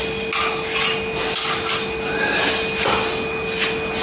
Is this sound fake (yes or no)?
no